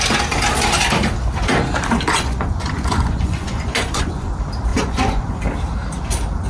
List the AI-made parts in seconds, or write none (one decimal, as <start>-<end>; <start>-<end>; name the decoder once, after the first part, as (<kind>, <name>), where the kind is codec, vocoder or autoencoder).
2.1-4.3 (vocoder, Vocos); 4.7-5.4